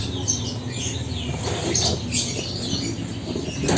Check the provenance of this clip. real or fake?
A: real